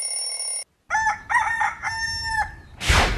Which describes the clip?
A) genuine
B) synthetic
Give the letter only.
A